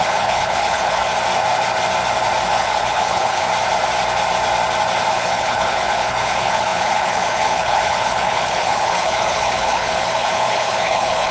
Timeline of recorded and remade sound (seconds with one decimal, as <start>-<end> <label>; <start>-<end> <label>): 0.0-1.1 remade; 1.1-2.5 recorded; 2.5-3.5 remade; 3.5-5.1 recorded; 5.1-11.3 remade